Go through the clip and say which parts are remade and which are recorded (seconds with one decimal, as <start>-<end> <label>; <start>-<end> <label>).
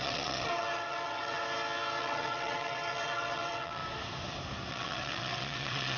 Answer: 0.0-1.4 remade; 1.4-2.0 recorded; 2.0-3.8 remade; 3.8-4.7 recorded; 4.7-6.0 remade